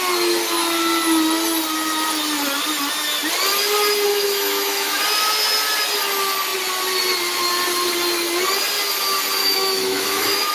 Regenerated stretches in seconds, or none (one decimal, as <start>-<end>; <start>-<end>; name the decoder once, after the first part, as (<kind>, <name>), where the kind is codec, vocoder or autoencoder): 4.1-5.0 (autoencoder, DAC-VAE); 9.4-10.5